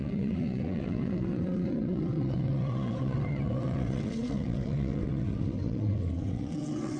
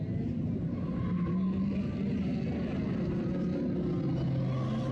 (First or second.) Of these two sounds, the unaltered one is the second